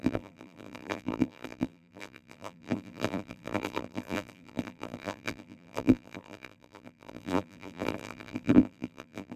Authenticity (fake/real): fake